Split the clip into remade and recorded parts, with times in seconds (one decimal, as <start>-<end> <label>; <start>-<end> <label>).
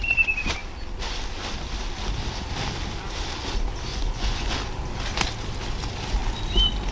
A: 0.0-3.9 recorded; 3.9-4.5 remade; 4.5-6.9 recorded